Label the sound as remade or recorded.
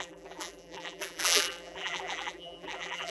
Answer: remade